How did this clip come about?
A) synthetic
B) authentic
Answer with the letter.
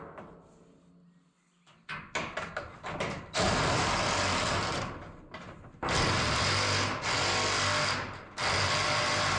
B